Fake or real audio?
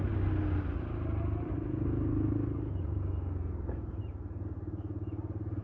real